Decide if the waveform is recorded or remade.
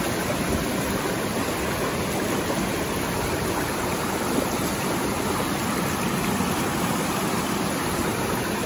recorded